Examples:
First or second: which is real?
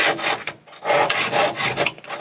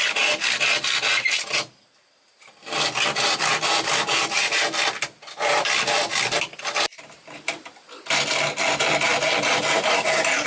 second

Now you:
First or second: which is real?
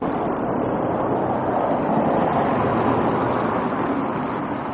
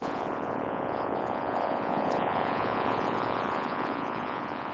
first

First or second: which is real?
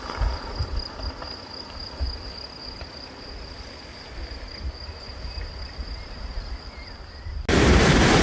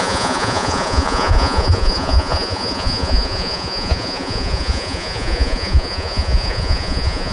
first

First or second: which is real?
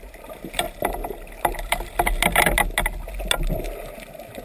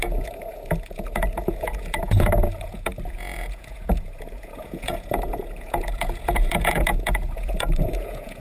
first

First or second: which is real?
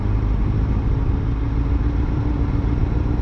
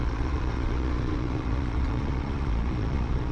first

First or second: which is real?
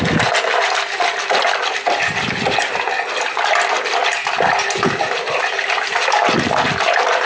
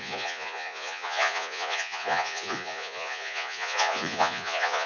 first